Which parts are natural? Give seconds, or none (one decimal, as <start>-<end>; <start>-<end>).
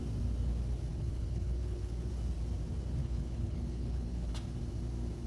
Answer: 0.0-0.9; 2.1-3.0; 4.3-5.3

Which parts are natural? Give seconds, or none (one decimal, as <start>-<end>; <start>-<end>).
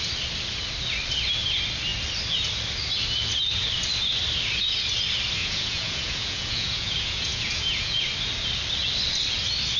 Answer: 0.0-5.4; 8.0-9.8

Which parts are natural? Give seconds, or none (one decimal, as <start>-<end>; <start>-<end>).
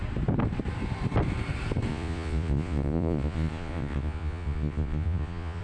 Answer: 0.0-1.9